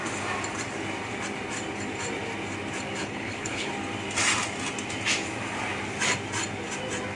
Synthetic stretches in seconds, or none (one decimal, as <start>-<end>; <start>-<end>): 3.0-3.7